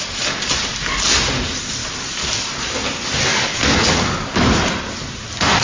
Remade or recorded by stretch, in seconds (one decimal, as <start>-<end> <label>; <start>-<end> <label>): 0.0-3.3 recorded; 3.3-4.4 remade; 4.4-5.6 recorded